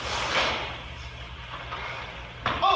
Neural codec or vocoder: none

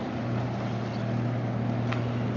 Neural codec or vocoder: none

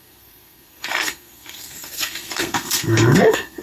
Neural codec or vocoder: codec, SNAC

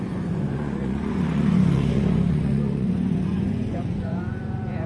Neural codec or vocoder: vocoder, Vocos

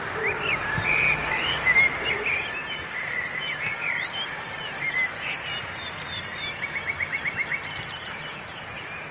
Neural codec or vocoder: vocoder, BigVGAN v2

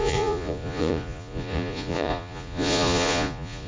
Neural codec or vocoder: vocoder, Vocos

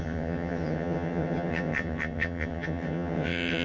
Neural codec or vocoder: vocoder, HiFi-GAN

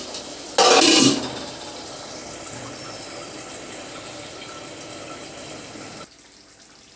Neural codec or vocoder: none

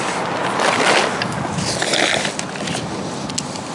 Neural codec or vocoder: none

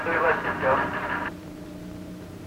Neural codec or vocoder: vocoder, BigVGAN v2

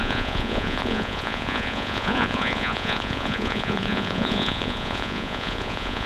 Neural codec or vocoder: vocoder, Vocos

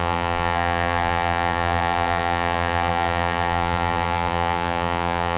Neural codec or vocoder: vocoder, BigVGAN v2